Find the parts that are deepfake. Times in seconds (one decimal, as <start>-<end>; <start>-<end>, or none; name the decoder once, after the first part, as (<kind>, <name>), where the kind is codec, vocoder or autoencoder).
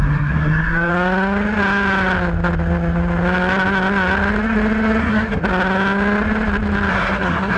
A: 0.0-0.9 (codec, SNAC); 5.0-5.4; 6.9-7.6